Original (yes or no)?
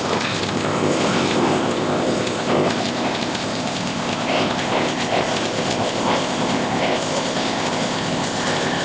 no